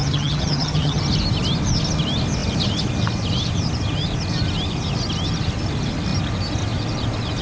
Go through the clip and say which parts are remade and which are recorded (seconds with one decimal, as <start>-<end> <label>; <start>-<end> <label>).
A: 0.0-1.0 remade; 1.0-7.4 recorded